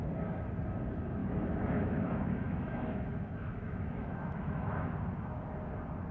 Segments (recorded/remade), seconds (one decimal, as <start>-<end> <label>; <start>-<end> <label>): 0.0-1.2 recorded; 1.2-4.9 remade; 4.9-6.1 recorded